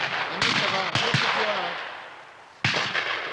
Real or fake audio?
real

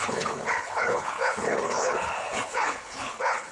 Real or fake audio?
fake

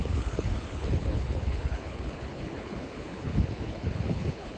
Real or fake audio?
fake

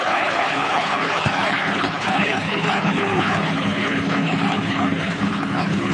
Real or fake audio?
fake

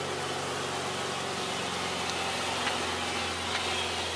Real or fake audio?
real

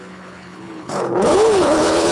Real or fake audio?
fake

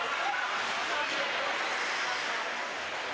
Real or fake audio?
real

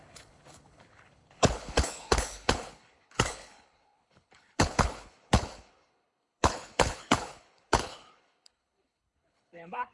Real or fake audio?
fake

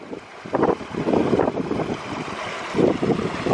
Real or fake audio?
real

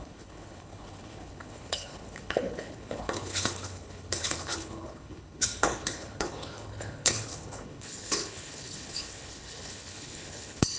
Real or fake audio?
fake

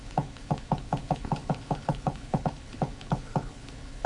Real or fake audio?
fake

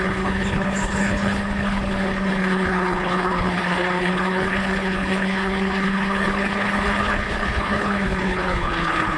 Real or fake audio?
fake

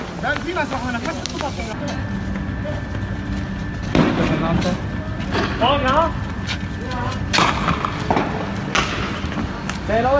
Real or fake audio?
real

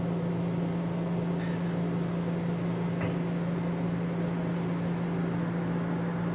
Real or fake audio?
real